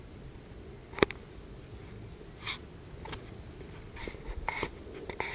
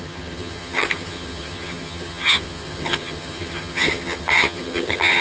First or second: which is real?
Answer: first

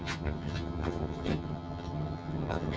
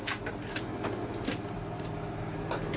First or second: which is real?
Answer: second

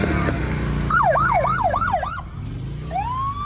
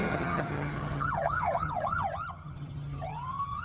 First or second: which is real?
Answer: first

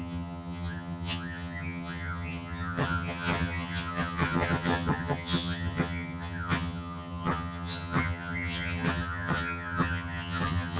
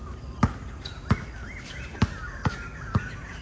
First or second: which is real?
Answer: second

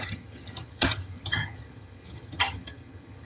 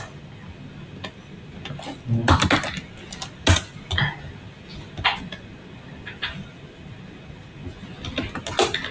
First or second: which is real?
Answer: second